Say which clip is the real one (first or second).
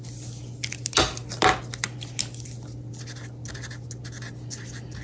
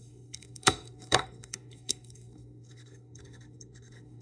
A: first